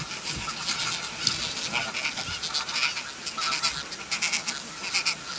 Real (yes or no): yes